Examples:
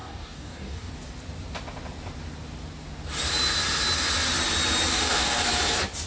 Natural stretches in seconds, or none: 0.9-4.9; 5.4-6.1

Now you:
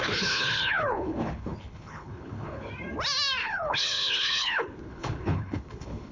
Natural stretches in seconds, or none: 2.7-3.4